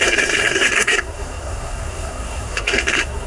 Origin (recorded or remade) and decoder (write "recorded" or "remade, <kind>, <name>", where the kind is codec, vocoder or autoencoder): remade, codec, SNAC